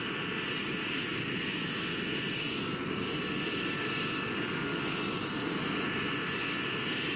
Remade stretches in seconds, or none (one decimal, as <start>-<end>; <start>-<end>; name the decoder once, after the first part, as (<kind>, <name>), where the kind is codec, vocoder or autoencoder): 4.7-5.9 (vocoder, BigVGAN v2)